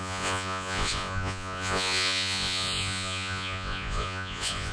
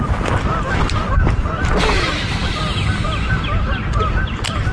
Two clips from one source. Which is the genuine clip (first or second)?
second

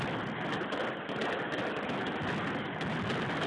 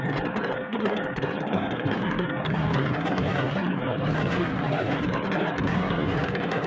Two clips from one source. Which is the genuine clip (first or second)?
first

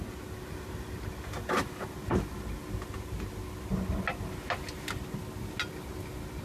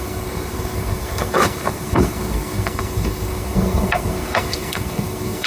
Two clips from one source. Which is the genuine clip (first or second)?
first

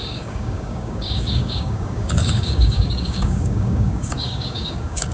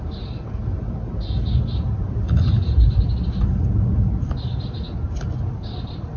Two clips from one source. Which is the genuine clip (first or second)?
second